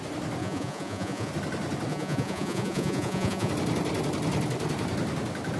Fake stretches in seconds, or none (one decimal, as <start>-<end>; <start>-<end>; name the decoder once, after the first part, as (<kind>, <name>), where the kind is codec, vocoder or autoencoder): 0.4-1.3 (vocoder, Vocos); 1.9-3.5